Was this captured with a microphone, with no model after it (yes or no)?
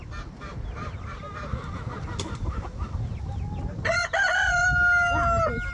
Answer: yes